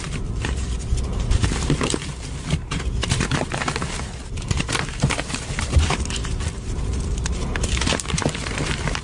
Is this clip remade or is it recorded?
remade